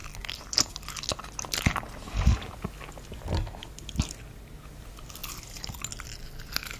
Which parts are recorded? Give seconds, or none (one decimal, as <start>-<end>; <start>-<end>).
0.0-6.8